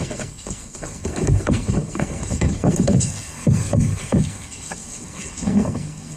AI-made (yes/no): yes